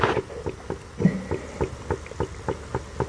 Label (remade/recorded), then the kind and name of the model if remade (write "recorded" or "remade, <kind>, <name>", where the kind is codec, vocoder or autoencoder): recorded